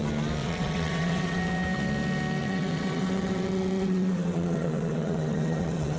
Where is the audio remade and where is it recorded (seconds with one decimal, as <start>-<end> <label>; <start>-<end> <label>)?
0.0-0.4 recorded; 0.4-1.4 remade; 1.4-2.4 recorded; 2.4-6.0 remade